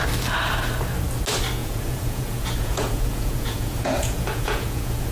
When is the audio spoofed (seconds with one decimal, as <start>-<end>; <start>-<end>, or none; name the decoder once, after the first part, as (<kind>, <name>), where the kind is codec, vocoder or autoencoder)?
1.6-5.1 (vocoder, Vocos)